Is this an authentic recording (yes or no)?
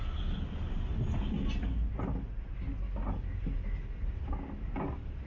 yes